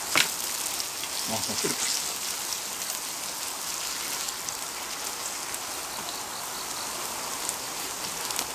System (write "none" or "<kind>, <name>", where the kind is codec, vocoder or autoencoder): none